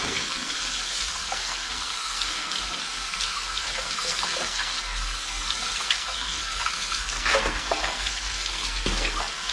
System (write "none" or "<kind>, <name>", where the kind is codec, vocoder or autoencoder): codec, SNAC